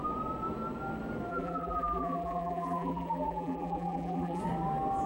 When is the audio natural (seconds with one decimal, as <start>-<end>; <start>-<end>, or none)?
0.0-1.3; 4.4-5.1